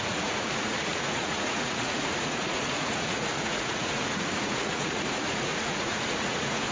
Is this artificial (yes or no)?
yes